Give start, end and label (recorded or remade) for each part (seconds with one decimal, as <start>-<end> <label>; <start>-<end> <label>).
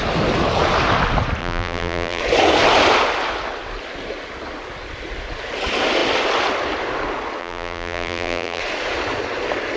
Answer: 0.0-1.4 recorded; 1.4-2.2 remade; 2.2-7.4 recorded; 7.4-8.6 remade; 8.6-9.8 recorded